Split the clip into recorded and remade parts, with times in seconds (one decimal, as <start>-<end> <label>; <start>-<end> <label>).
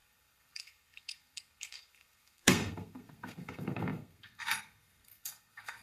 0.0-5.8 remade